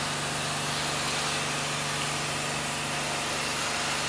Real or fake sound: real